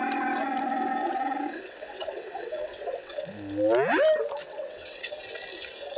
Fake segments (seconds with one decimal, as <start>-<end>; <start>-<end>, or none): 1.0-3.3; 4.4-5.1